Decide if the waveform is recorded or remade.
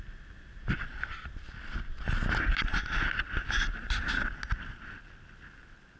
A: recorded